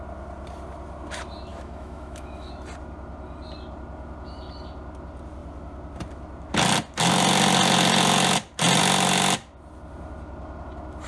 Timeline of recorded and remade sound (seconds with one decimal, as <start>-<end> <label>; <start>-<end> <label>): 0.0-1.5 recorded; 1.5-2.5 remade; 2.5-11.1 recorded